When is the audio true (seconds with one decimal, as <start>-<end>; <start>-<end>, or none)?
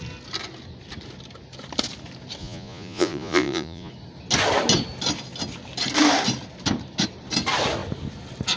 0.0-2.4; 3.9-8.6